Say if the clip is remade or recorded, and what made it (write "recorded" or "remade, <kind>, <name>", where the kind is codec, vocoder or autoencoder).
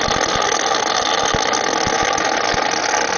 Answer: recorded